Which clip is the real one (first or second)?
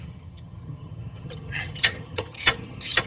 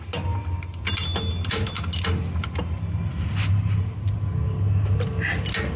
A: second